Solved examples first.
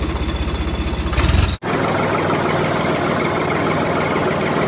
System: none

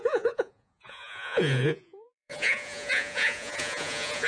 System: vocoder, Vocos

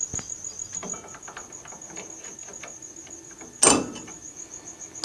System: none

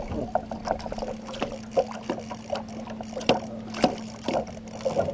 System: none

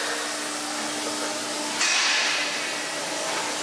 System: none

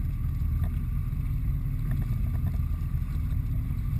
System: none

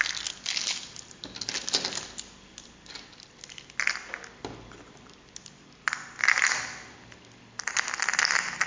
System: none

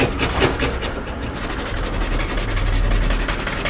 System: none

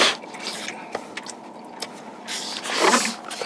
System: none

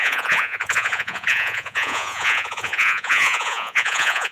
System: vocoder, Vocos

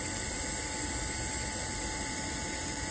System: none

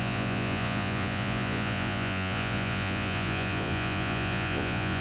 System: vocoder, Vocos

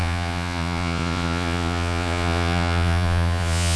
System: vocoder, Vocos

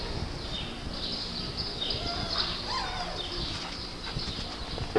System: none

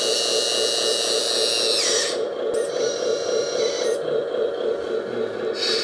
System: none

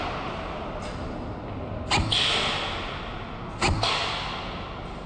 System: none